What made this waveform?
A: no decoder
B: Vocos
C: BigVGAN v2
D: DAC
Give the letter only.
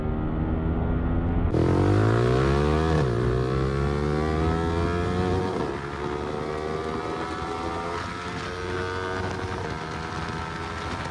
A